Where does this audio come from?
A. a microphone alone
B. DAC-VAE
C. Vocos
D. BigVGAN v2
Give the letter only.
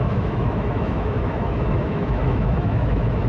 B